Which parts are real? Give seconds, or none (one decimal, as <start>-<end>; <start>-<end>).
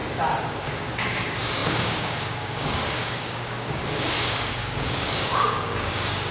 0.0-0.5